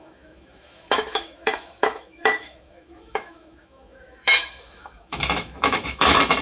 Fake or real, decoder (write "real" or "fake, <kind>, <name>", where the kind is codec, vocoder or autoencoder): fake, autoencoder, DAC-VAE